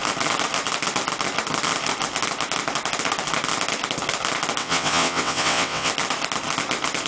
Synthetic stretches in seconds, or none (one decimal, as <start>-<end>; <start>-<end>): 4.6-5.9